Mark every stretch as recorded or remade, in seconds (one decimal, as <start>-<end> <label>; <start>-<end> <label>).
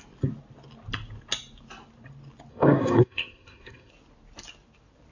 0.0-2.5 recorded; 2.5-3.9 remade; 3.9-5.1 recorded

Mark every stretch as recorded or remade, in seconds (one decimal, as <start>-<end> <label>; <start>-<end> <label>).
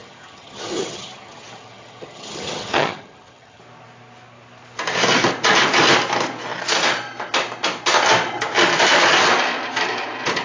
0.0-3.6 remade; 3.6-10.4 recorded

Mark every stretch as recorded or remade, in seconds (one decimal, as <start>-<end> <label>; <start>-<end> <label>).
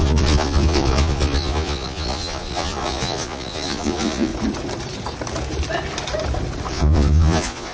0.0-4.3 remade; 4.3-6.7 recorded; 6.7-7.7 remade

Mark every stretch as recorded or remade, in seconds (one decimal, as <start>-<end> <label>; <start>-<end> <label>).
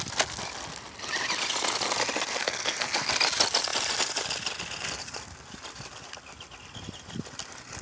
0.0-2.4 recorded; 2.4-3.1 remade; 3.1-7.8 recorded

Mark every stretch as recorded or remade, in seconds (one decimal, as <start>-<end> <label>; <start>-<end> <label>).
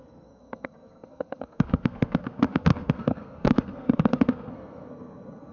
0.0-5.5 remade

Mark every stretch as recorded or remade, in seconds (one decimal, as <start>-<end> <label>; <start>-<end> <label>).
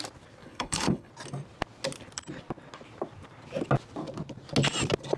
0.0-0.4 recorded; 0.4-1.1 remade; 1.1-5.2 recorded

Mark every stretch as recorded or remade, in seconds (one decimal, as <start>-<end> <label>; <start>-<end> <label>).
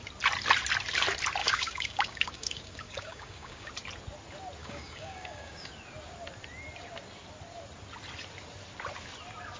0.0-1.4 recorded; 1.4-3.7 remade; 3.7-4.6 recorded; 4.6-5.7 remade; 5.7-9.6 recorded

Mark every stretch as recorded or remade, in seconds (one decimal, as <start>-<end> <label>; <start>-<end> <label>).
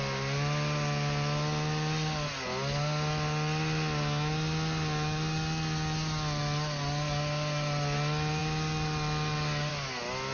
0.0-10.3 recorded